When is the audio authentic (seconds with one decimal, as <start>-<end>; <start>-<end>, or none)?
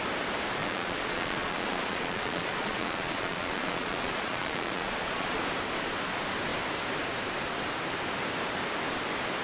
0.0-0.6; 5.4-9.4